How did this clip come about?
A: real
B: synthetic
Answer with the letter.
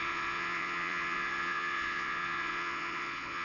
B